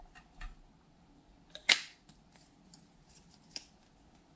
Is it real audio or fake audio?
real